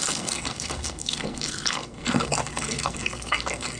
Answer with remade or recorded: remade